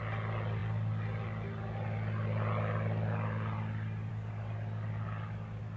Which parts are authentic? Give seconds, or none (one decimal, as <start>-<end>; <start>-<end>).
0.0-5.8